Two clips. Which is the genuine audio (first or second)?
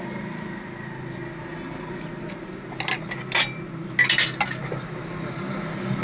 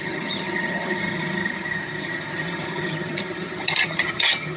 first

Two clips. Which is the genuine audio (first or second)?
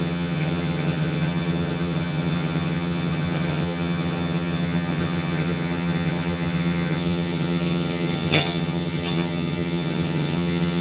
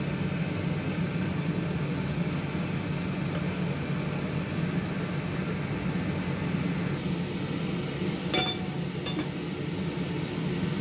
second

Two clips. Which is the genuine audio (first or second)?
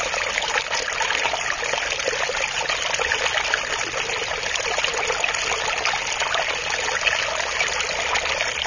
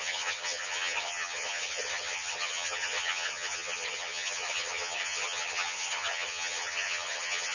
first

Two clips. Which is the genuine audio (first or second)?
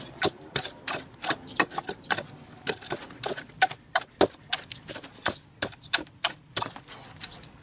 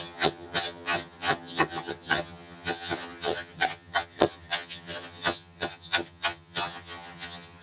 first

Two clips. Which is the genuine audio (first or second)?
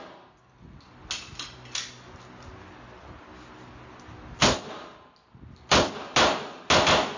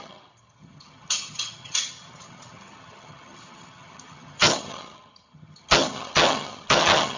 first